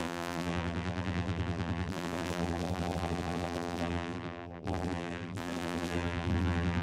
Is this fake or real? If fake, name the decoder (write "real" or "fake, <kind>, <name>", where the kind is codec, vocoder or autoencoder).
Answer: fake, vocoder, BigVGAN v2